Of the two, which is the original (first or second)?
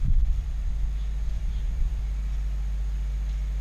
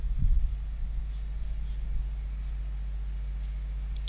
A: second